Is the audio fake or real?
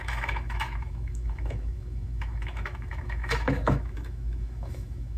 fake